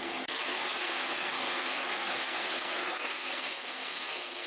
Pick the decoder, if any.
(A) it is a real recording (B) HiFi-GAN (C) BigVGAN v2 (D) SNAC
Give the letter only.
D